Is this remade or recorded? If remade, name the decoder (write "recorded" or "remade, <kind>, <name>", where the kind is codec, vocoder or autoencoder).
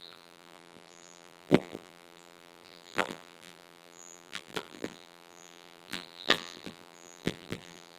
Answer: remade, vocoder, BigVGAN v2